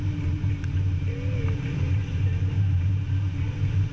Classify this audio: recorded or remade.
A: remade